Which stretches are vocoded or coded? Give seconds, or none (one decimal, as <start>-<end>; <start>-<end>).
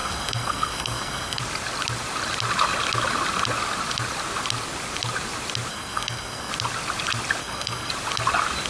0.0-1.4; 5.7-6.5; 7.4-7.9